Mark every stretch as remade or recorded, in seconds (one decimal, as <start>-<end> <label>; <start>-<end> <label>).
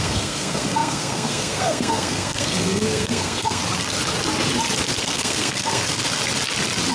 0.0-3.6 remade; 3.6-5.0 recorded; 5.0-6.0 remade; 6.0-6.9 recorded